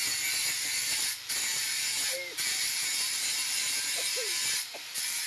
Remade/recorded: remade